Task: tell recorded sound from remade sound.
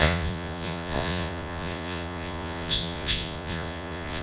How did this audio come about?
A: remade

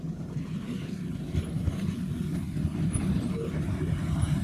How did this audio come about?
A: recorded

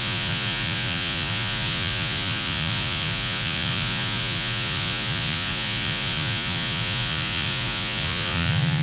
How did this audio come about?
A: remade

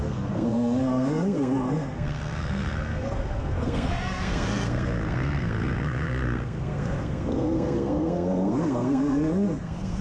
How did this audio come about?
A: remade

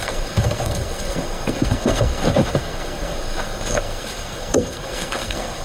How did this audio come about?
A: remade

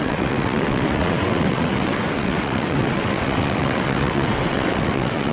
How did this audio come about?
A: remade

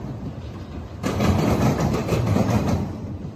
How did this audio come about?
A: remade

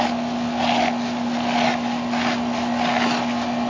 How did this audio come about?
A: recorded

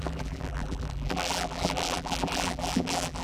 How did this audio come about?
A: remade